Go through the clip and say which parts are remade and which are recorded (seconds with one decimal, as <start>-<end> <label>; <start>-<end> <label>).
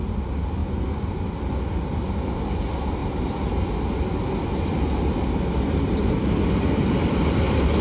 0.0-7.8 recorded